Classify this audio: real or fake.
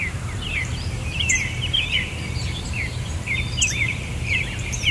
fake